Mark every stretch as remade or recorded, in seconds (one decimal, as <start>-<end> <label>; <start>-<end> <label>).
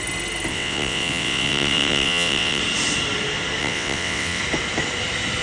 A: 0.0-0.5 recorded; 0.5-2.6 remade; 2.6-3.6 recorded; 3.6-4.4 remade; 4.4-5.4 recorded